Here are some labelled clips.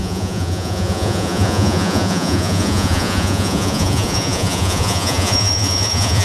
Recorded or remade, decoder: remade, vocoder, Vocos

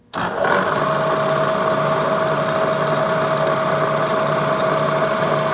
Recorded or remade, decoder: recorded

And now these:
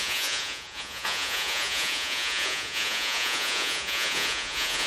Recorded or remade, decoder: remade, vocoder, Vocos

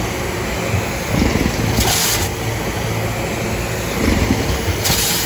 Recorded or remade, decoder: recorded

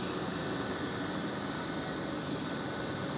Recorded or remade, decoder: recorded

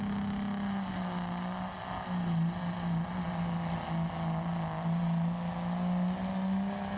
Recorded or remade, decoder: recorded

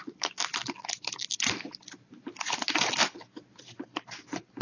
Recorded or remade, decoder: recorded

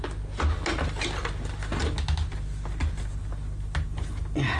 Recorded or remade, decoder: recorded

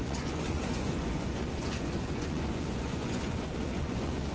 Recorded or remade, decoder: remade, vocoder, Vocos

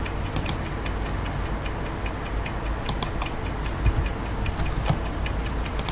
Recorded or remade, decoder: recorded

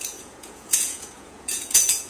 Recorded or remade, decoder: remade, vocoder, Vocos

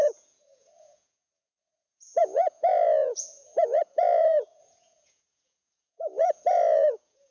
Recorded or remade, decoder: remade, vocoder, Vocos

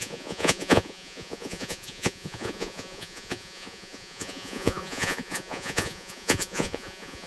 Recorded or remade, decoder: remade, vocoder, Vocos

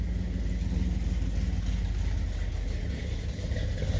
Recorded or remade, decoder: recorded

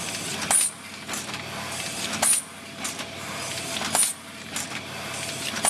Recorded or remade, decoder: recorded